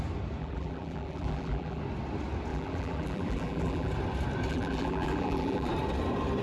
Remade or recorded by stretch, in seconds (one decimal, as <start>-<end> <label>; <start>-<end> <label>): 0.0-0.4 recorded; 0.4-1.8 remade; 1.8-2.5 recorded; 2.5-3.9 remade; 3.9-4.5 recorded; 4.5-5.7 remade; 5.7-6.4 recorded